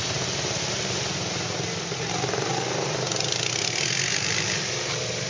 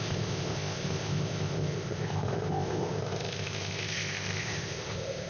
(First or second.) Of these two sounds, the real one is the first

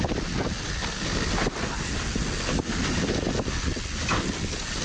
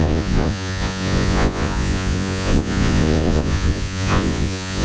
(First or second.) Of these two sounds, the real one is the first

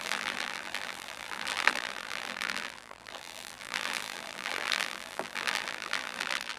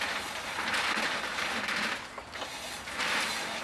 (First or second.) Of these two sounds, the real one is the second